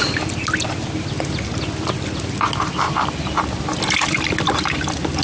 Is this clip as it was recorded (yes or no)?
yes